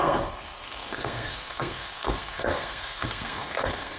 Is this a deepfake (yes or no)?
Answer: yes